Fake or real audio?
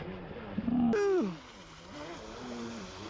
real